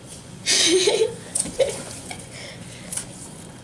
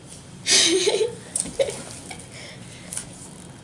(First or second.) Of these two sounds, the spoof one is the first